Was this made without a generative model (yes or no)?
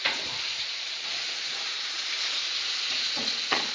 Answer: no